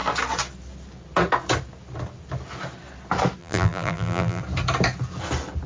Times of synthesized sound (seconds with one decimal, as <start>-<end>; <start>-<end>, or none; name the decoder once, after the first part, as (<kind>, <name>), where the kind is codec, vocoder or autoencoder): 3.4-4.4 (vocoder, BigVGAN v2)